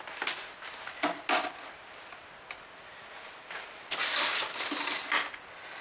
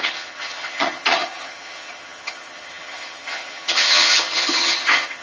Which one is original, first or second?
first